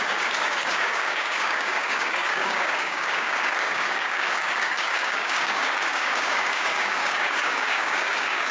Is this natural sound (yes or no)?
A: no